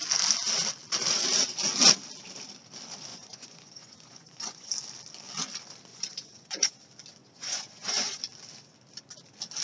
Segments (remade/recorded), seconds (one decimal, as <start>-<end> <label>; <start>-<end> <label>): 0.0-3.1 recorded; 3.1-4.7 remade; 4.7-5.9 recorded; 5.9-6.8 remade; 6.8-7.2 recorded; 7.2-8.2 remade; 8.2-9.6 recorded